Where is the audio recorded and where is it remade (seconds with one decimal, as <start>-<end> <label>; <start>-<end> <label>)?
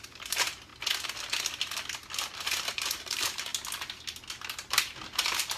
0.0-0.7 remade; 0.7-2.3 recorded; 2.3-3.5 remade; 3.5-4.3 recorded; 4.3-5.6 remade